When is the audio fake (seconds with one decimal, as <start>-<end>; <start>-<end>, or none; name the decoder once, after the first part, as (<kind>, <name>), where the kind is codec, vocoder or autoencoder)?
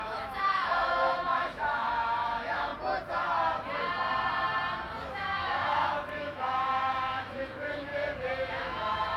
0.0-2.7 (autoencoder, DAC-VAE); 5.1-7.9; 8.5-9.2